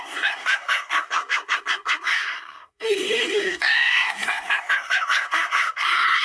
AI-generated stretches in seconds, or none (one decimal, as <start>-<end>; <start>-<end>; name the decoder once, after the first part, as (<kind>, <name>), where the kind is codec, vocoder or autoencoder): 0.0-6.2 (codec, SNAC)